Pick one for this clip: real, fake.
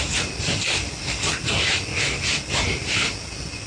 real